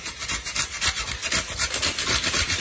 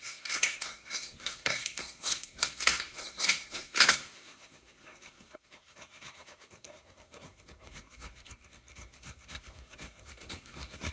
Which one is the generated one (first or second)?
second